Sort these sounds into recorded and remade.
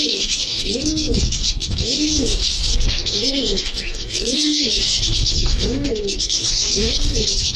remade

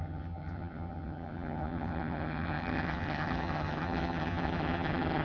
remade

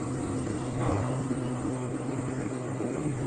remade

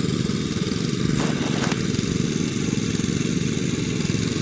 recorded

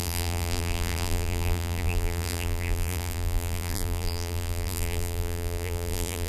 remade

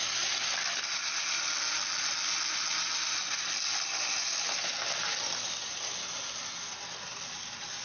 recorded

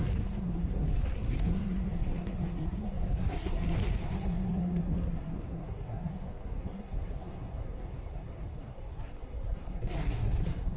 remade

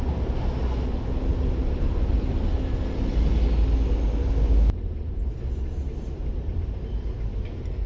recorded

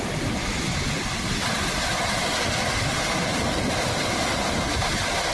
recorded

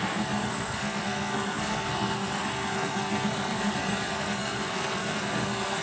remade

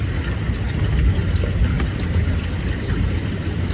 recorded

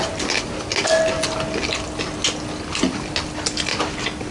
recorded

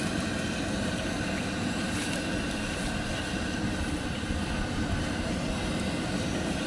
recorded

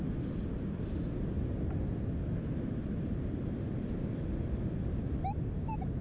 recorded